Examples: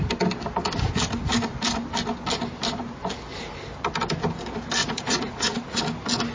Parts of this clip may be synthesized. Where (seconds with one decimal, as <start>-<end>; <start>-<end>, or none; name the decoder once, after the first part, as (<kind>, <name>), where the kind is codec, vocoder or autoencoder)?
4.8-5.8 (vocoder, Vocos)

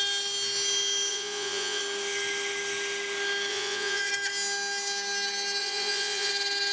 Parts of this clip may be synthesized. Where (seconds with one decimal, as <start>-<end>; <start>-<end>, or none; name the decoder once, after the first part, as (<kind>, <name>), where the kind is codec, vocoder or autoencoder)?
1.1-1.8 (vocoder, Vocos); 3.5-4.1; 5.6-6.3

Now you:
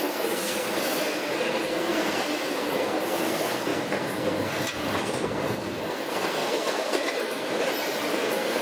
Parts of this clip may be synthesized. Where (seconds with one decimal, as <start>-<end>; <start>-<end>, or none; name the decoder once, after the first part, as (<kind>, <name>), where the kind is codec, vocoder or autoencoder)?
0.0-7.5 (codec, SNAC); 8.1-8.6